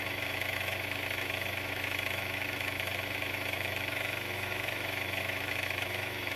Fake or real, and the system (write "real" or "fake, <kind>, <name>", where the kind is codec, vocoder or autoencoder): fake, autoencoder, DAC-VAE